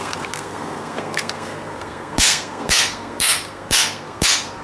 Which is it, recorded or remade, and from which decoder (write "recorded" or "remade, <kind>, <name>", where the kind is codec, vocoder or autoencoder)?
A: remade, codec, SNAC